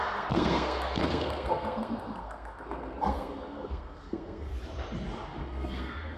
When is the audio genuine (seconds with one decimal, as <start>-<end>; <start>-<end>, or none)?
4.5-5.4